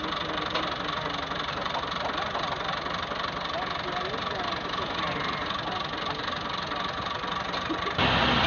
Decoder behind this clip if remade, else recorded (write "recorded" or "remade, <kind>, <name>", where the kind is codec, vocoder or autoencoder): recorded